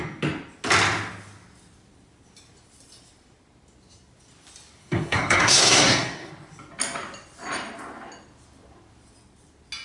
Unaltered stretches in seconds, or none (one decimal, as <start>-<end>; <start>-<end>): 0.0-4.8; 6.3-9.8